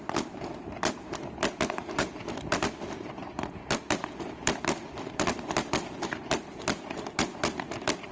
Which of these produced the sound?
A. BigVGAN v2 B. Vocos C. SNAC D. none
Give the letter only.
A